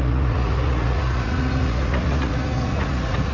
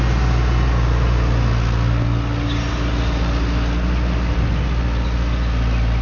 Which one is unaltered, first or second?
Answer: second